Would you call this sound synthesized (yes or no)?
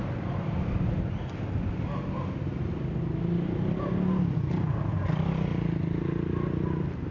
no